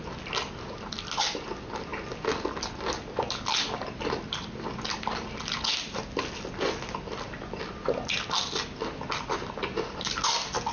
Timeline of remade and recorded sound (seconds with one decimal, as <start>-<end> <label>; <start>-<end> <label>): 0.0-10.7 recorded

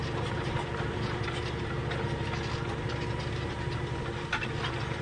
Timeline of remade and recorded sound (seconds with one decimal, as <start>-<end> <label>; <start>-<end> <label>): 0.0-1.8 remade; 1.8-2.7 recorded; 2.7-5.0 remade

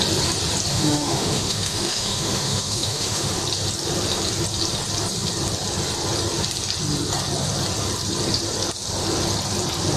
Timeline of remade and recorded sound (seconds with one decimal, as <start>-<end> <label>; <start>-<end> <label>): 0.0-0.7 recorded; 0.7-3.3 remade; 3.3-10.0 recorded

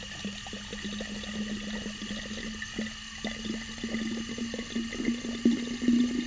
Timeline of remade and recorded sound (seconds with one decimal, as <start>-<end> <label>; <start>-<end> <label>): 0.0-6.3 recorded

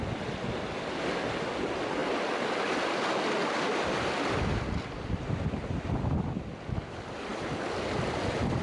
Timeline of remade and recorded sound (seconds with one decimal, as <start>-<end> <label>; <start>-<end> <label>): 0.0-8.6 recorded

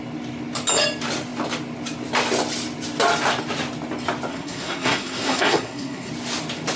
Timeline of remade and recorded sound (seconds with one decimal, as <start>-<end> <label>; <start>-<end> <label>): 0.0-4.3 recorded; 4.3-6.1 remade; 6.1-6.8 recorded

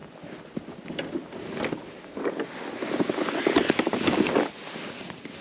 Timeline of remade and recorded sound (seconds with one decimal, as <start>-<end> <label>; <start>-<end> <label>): 0.0-5.4 recorded

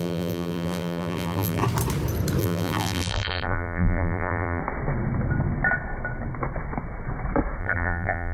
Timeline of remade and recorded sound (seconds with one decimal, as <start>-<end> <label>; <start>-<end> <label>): 0.0-1.6 remade; 1.6-2.4 recorded; 2.4-4.6 remade; 4.6-7.6 recorded; 7.6-8.3 remade